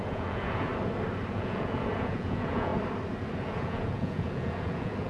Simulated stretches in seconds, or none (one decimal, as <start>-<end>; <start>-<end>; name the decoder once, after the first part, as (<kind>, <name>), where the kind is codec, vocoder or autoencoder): 0.0-0.7 (vocoder, Vocos); 1.3-2.7; 3.4-5.1